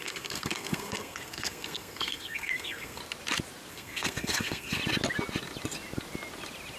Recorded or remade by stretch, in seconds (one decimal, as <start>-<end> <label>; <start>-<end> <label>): 0.0-3.0 remade; 3.0-3.7 recorded; 3.7-4.8 remade; 4.8-6.8 recorded